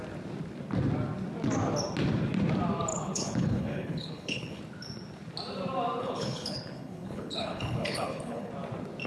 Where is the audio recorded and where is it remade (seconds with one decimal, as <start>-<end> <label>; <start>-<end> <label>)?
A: 0.0-2.9 recorded; 2.9-4.6 remade; 4.6-6.0 recorded; 6.0-8.5 remade; 8.5-9.1 recorded